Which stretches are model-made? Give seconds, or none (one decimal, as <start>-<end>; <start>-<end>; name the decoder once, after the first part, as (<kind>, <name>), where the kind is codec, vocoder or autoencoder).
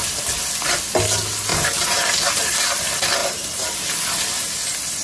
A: 1.5-2.6 (vocoder, BigVGAN v2); 3.2-3.9